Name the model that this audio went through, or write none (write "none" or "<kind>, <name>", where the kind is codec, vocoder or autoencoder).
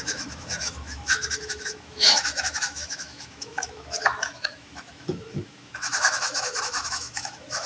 autoencoder, DAC-VAE